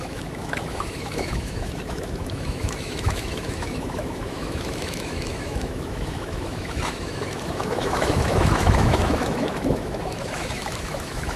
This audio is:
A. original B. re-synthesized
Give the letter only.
B